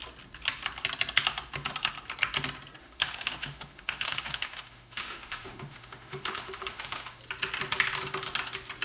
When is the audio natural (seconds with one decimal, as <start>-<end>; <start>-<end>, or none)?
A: 0.0-2.8; 7.2-8.8